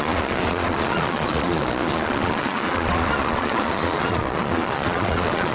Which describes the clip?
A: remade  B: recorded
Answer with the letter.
A